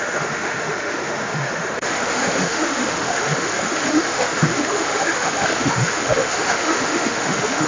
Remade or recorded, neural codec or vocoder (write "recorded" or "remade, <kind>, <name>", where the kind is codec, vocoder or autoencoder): remade, autoencoder, DAC-VAE